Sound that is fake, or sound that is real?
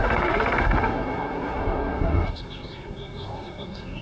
fake